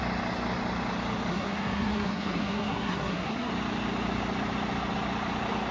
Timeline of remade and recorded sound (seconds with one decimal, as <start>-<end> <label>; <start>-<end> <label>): 0.0-1.3 recorded; 1.3-3.5 remade; 3.5-5.7 recorded